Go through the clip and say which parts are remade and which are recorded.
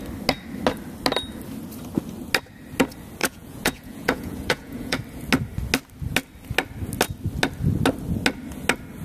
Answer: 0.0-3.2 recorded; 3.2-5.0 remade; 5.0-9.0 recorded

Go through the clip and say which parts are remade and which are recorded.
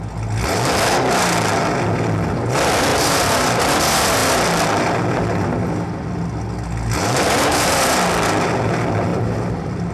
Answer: 0.0-2.9 recorded; 2.9-3.8 remade; 3.8-9.1 recorded; 9.1-9.9 remade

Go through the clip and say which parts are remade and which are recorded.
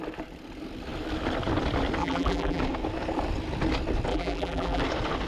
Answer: 0.0-2.0 recorded; 2.0-2.6 remade; 2.6-4.1 recorded; 4.1-4.8 remade; 4.8-5.3 recorded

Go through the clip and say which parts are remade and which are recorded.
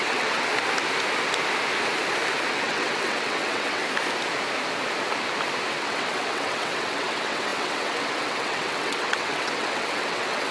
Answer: 0.0-0.5 remade; 0.5-2.5 recorded; 2.5-3.8 remade; 3.8-5.7 recorded; 5.7-10.5 remade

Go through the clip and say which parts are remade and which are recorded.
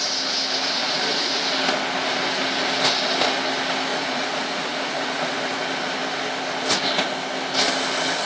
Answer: 0.0-0.8 recorded; 0.8-1.4 remade; 1.4-3.9 recorded; 3.9-5.6 remade; 5.6-8.3 recorded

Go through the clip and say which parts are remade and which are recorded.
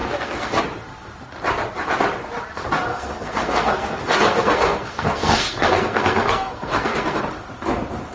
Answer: 0.0-0.6 remade; 0.6-2.9 recorded; 2.9-7.2 remade; 7.2-8.1 recorded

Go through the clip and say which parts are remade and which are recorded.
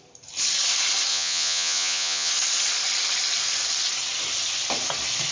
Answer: 0.0-1.1 recorded; 1.1-2.3 remade; 2.3-5.3 recorded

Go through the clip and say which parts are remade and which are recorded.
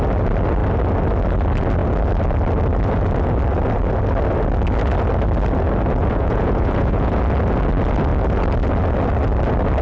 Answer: 0.0-6.0 recorded; 6.0-7.2 remade; 7.2-9.8 recorded